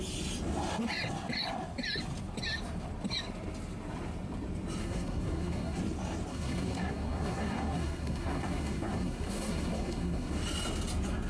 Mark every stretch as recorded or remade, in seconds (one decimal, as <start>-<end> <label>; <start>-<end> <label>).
0.0-4.8 recorded; 4.8-5.8 remade; 5.8-6.3 recorded; 6.3-10.4 remade; 10.4-11.3 recorded